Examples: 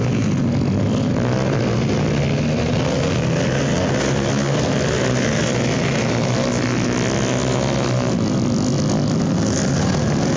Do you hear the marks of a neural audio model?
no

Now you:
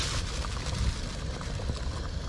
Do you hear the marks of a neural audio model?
no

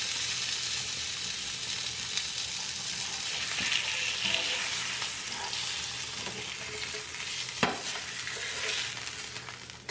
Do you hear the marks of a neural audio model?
no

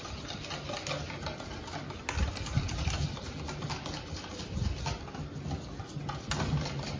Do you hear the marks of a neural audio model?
no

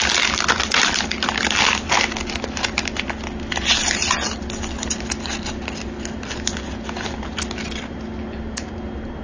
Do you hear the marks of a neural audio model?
no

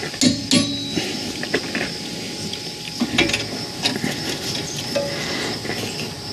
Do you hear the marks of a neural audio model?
no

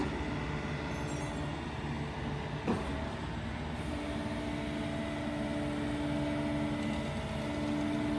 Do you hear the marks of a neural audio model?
no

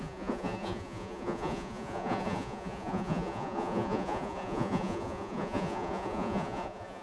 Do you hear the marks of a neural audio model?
yes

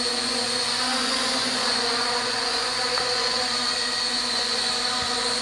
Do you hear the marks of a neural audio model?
yes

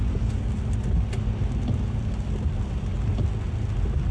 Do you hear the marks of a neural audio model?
no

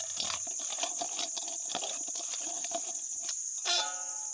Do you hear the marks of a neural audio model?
no